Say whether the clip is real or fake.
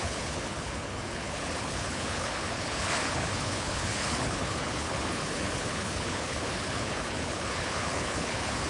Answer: fake